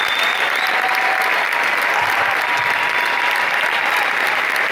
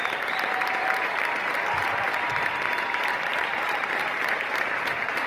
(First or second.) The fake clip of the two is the second